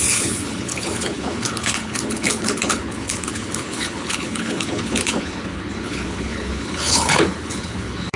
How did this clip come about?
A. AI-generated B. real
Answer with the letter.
A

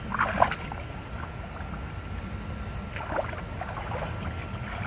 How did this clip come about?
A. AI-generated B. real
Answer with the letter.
B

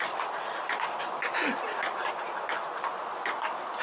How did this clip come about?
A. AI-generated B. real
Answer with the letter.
B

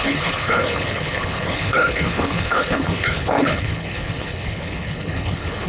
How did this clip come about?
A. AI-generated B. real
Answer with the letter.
A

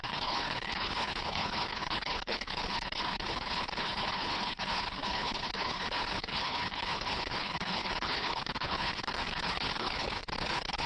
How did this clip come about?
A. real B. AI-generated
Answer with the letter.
B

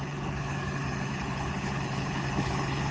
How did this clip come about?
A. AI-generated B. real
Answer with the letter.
A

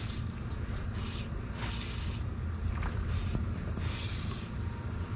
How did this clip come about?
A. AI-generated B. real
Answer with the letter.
B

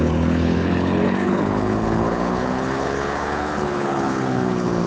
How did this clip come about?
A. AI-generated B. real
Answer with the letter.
A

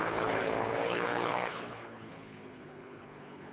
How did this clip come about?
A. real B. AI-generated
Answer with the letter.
B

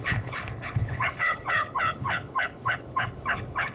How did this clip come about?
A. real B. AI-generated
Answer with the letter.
B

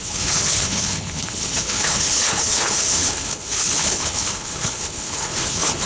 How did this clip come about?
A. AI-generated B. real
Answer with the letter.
A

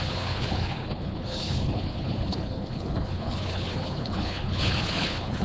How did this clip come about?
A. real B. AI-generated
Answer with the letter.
B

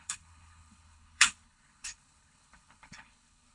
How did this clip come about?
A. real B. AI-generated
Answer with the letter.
B